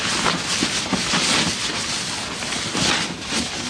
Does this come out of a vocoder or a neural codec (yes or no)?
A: yes